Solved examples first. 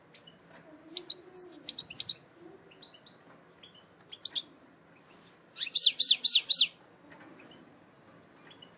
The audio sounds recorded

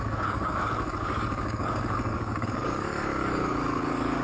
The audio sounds remade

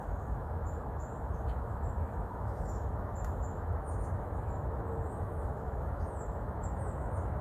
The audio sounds remade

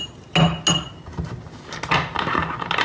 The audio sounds recorded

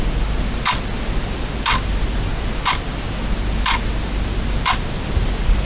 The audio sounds recorded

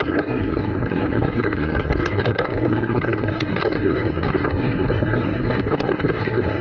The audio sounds remade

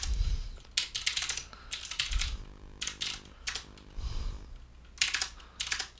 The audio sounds recorded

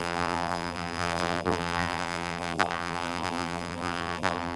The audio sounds remade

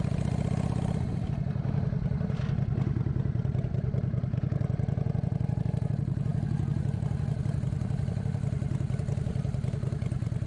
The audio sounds recorded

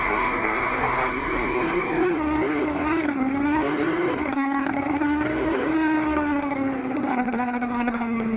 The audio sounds remade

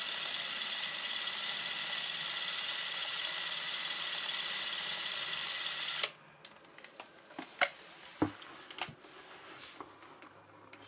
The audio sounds recorded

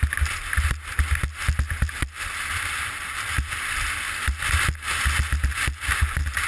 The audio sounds recorded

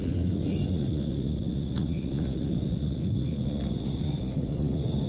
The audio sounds remade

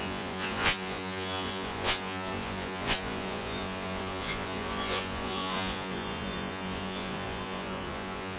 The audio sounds remade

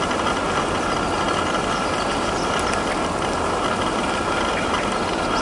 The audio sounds recorded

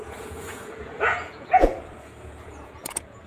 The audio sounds remade